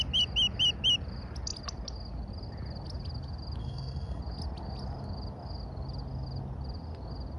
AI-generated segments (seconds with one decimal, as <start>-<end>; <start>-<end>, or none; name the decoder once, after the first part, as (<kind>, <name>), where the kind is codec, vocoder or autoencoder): 3.6-4.2 (codec, SNAC)